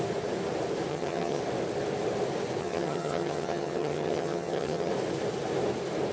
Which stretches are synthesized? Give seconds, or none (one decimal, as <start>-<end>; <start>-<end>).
0.9-1.4; 2.6-4.9